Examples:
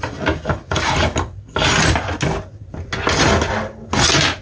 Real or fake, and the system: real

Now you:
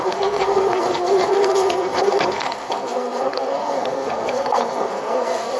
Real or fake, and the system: fake, codec, SNAC